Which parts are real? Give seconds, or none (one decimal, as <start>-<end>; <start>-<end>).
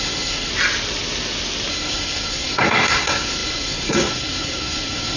0.5-1.7